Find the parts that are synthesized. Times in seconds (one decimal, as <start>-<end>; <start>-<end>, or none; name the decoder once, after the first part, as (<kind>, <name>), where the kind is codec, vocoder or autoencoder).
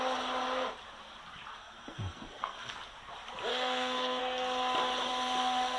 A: 1.5-2.7 (codec, SNAC); 3.5-4.2